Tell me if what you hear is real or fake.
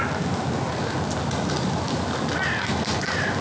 real